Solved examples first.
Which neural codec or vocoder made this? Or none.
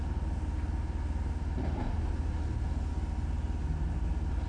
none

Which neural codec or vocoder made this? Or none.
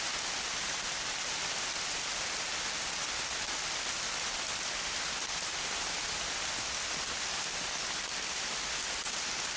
none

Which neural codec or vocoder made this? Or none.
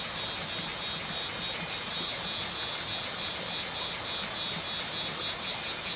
none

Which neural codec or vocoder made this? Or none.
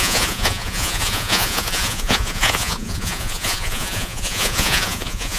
vocoder, Vocos